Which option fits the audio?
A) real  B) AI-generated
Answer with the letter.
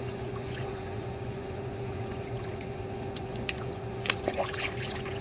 B